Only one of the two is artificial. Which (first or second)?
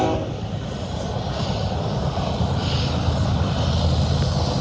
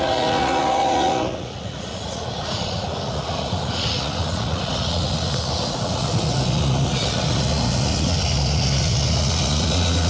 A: second